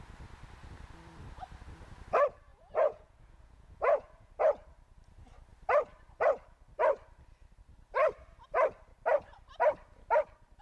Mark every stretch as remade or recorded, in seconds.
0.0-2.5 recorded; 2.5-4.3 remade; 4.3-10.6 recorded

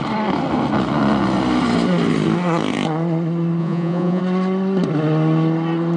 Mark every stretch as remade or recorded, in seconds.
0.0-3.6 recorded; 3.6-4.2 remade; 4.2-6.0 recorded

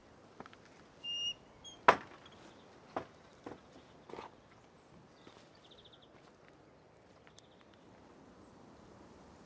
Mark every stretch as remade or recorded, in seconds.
0.0-9.5 recorded

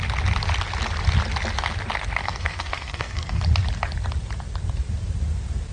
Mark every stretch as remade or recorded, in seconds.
0.0-2.2 recorded; 2.2-3.4 remade; 3.4-5.7 recorded

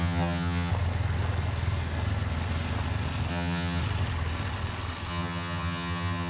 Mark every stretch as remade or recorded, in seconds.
0.0-0.7 remade; 0.7-3.3 recorded; 3.3-3.8 remade; 3.8-5.1 recorded; 5.1-6.3 remade

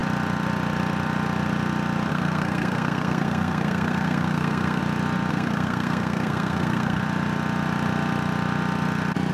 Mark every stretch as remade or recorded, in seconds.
0.0-2.1 recorded; 2.1-4.8 remade; 4.8-5.3 recorded; 5.3-7.0 remade; 7.0-9.3 recorded

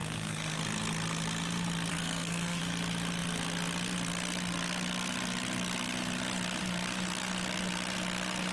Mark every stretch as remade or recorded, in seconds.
0.0-0.6 remade; 0.6-1.9 recorded; 1.9-2.6 remade; 2.6-8.5 recorded